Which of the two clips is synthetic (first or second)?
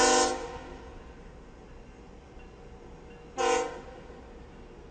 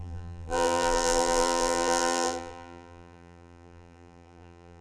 second